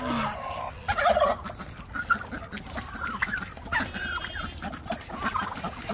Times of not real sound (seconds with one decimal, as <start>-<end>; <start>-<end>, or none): none